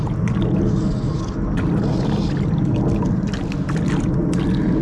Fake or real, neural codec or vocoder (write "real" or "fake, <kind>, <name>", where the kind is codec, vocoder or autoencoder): real